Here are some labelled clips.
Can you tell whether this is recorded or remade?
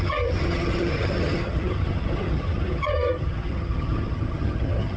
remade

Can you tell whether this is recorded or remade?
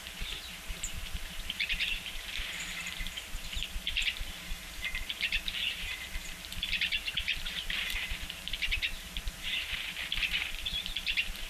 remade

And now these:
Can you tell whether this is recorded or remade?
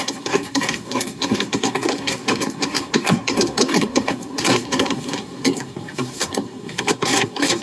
remade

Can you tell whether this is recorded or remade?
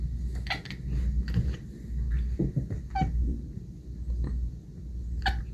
recorded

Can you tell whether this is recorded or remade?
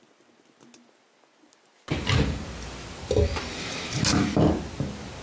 recorded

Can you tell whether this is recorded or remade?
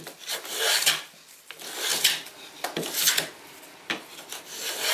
recorded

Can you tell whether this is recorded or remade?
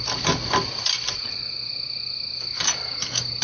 recorded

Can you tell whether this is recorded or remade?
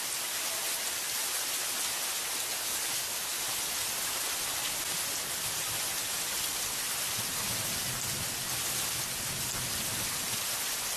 recorded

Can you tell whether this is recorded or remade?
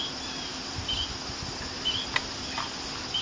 recorded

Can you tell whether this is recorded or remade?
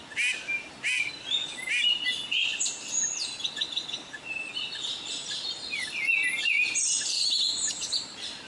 recorded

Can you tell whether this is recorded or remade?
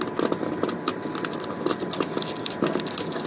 recorded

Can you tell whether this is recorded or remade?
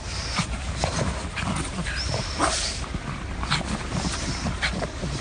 recorded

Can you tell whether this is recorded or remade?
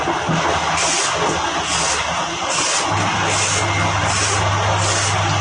recorded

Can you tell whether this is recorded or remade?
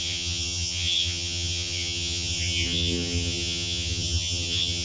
remade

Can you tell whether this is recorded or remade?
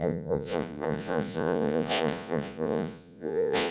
remade